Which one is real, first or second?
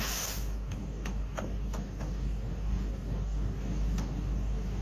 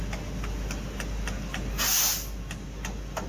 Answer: second